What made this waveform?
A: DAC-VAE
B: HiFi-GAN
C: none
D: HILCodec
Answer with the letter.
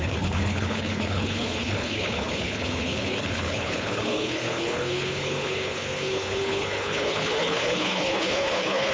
D